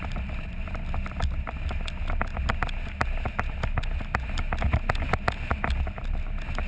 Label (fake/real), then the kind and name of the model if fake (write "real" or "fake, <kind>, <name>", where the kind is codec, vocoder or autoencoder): real